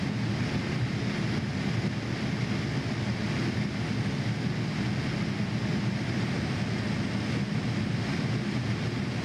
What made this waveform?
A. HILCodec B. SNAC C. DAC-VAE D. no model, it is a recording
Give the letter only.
D